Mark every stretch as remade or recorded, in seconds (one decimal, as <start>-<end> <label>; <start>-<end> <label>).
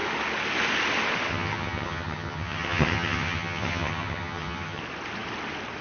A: 0.0-1.3 recorded; 1.3-4.8 remade; 4.8-5.8 recorded